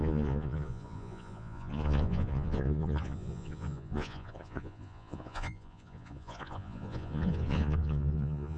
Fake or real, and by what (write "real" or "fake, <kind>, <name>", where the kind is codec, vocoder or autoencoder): fake, vocoder, Vocos